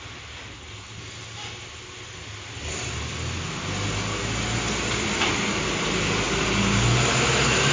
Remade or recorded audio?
recorded